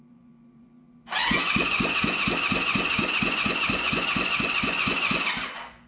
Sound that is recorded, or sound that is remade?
remade